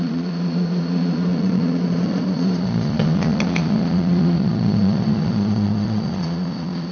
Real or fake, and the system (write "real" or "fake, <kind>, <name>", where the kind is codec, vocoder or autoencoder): fake, vocoder, Vocos